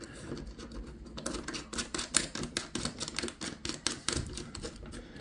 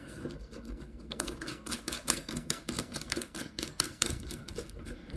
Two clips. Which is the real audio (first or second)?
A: first